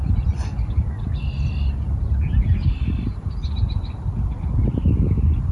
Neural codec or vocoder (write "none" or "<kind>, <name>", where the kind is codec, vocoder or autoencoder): none